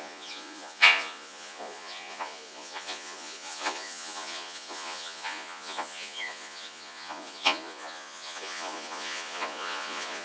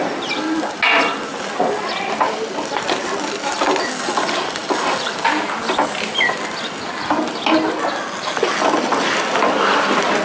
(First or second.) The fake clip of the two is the first